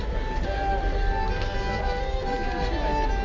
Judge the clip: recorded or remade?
recorded